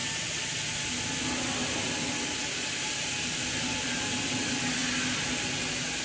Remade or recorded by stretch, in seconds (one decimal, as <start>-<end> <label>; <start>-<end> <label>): 0.0-6.0 recorded